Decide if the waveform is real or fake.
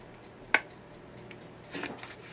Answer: real